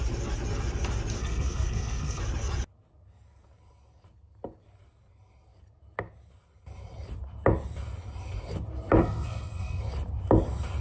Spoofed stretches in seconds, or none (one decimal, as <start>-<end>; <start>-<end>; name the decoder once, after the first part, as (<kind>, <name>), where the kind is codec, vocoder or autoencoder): 1.2-2.2 (codec, SNAC); 9.0-9.8